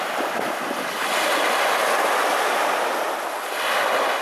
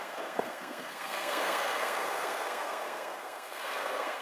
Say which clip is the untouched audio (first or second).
first